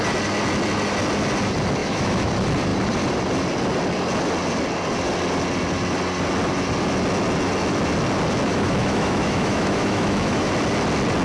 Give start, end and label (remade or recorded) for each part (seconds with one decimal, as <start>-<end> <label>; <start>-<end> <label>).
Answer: 0.0-1.8 recorded; 1.8-2.3 remade; 2.3-8.5 recorded; 8.5-10.5 remade; 10.5-11.2 recorded